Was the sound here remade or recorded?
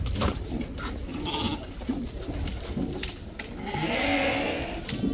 recorded